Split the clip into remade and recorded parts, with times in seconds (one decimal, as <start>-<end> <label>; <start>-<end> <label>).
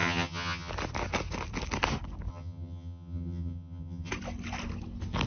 0.0-0.7 remade; 0.7-2.3 recorded; 2.3-4.1 remade; 4.1-5.3 recorded